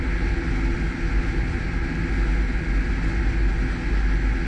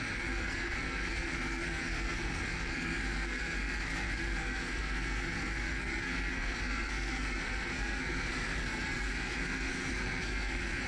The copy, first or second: second